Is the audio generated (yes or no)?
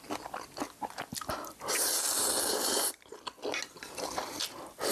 no